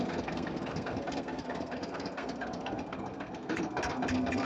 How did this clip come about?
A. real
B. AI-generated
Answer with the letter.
B